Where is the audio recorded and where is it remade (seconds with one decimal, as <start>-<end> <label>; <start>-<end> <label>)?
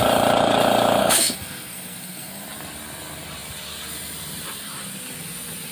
0.0-1.0 recorded; 1.0-2.4 remade; 2.4-5.7 recorded